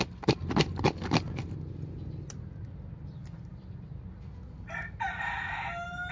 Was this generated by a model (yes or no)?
no